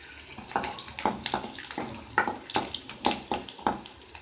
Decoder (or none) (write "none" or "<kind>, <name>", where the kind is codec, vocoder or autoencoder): none